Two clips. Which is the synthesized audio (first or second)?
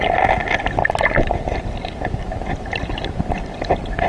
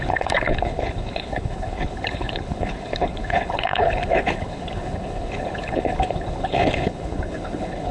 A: second